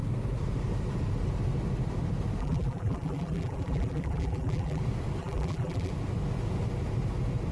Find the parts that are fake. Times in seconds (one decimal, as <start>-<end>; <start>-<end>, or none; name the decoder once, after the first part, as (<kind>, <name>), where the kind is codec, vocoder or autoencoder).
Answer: 2.4-4.8 (vocoder, BigVGAN v2); 5.2-5.9